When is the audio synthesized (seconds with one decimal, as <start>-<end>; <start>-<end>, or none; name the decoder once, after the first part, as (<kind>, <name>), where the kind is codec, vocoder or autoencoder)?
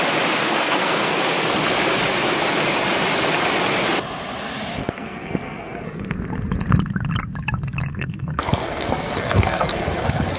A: 0.4-1.2 (codec, SNAC); 4.8-6.2; 7.9-10.4